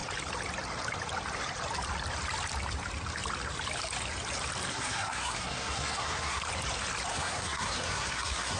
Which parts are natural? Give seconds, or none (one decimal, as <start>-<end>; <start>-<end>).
0.0-4.7; 6.4-7.1